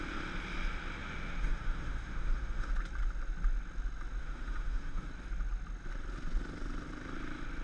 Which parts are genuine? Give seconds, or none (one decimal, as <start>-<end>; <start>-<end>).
0.0-1.0; 2.7-4.2; 5.1-7.6